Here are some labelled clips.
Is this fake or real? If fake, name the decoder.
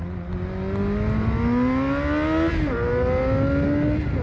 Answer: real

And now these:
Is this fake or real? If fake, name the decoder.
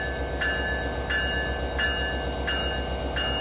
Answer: real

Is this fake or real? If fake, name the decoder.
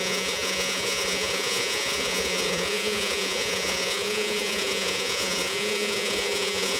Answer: fake, vocoder, Vocos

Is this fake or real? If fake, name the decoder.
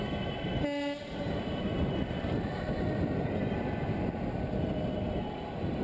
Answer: real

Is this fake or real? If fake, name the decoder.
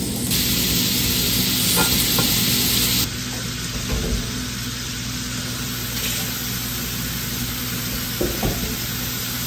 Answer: real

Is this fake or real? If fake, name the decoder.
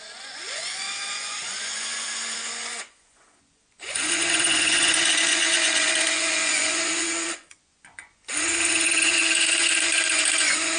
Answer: fake, vocoder, Vocos